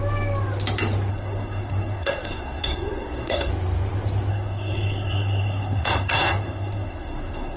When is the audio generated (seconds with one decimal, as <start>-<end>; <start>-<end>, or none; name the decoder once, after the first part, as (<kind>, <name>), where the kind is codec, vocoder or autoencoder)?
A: 1.1-3.5 (codec, SNAC); 4.3-7.6